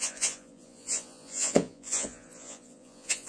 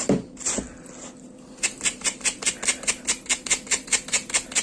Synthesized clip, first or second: first